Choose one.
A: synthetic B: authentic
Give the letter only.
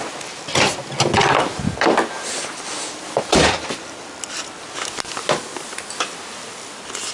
B